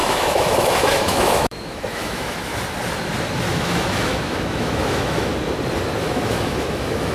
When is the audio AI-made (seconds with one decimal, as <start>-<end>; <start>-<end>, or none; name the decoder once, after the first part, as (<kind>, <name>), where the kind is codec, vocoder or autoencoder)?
0.0-2.5 (autoencoder, DAC-VAE); 3.5-5.3; 6.0-7.1